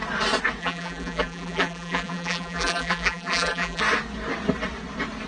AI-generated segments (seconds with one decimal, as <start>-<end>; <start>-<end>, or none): 0.6-3.8